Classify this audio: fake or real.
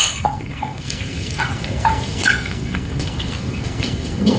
fake